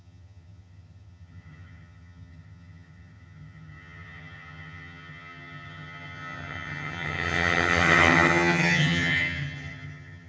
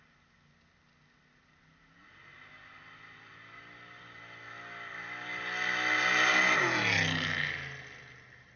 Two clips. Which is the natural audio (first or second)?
second